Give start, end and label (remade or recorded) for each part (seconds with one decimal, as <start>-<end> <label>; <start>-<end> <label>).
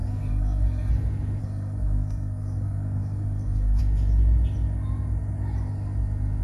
0.0-0.9 remade; 0.9-1.4 recorded; 1.4-3.8 remade; 3.8-6.4 recorded